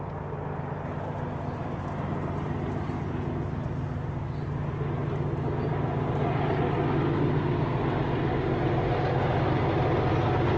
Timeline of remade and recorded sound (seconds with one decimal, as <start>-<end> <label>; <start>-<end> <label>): 0.0-10.6 recorded